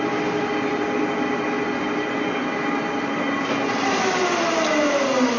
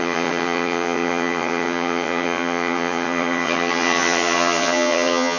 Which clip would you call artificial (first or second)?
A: second